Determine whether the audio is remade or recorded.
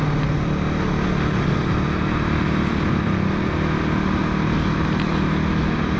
recorded